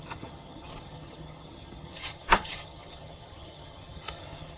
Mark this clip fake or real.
fake